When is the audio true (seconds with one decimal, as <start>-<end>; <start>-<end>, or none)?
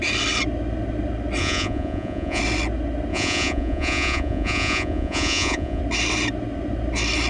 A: 0.0-1.4; 2.4-3.1; 5.8-7.3